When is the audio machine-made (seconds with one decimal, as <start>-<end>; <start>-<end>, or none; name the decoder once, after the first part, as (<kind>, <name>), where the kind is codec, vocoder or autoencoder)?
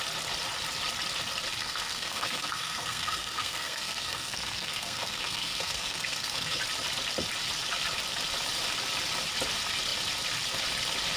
1.6-6.6 (codec, SNAC)